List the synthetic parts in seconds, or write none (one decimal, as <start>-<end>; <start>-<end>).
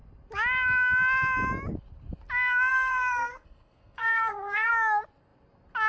2.7-4.7